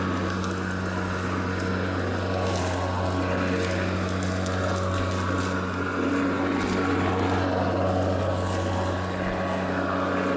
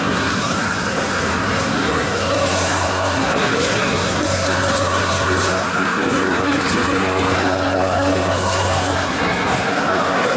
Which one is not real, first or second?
second